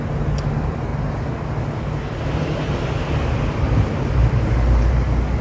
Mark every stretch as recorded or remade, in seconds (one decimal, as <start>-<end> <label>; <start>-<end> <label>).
0.0-0.9 remade; 0.9-2.4 recorded; 2.4-5.4 remade